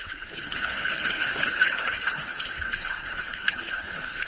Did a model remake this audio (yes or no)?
yes